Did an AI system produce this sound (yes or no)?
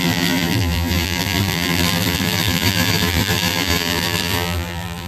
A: yes